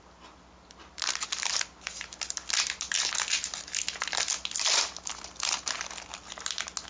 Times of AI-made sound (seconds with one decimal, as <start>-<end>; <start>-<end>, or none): none